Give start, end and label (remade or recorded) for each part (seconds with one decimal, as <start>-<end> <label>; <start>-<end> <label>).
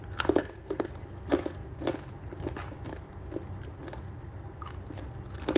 0.0-0.4 recorded; 0.4-0.9 remade; 0.9-5.6 recorded